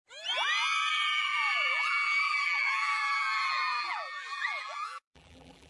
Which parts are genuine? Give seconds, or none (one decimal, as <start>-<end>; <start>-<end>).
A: 0.0-0.9